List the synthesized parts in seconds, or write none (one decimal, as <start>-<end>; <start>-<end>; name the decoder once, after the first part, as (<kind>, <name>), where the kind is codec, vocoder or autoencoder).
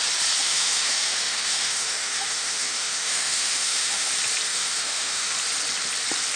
0.4-4.1 (autoencoder, DAC-VAE); 4.5-5.3